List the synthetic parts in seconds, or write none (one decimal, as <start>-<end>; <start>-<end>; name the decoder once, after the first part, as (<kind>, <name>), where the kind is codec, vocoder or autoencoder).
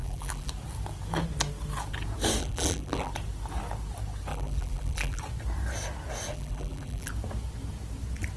0.0-0.5 (vocoder, BigVGAN v2); 2.4-3.1; 4.3-5.2; 6.3-7.1